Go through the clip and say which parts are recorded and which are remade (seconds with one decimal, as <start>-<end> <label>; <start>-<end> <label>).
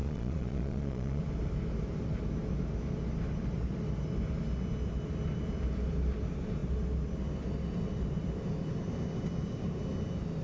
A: 0.0-1.2 remade; 1.2-10.4 recorded